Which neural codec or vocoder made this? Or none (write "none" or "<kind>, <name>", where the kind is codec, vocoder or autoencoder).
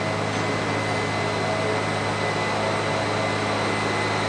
none